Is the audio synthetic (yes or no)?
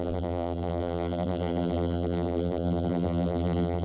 yes